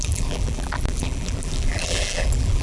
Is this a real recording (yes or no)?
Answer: no